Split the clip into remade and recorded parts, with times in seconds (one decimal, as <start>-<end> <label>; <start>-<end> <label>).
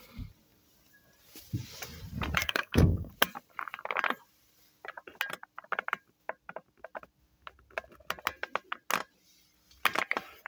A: 0.0-2.4 recorded; 2.4-3.1 remade; 3.1-10.5 recorded